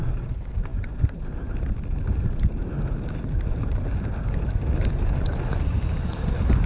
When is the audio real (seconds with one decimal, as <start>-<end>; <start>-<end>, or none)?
0.0-6.7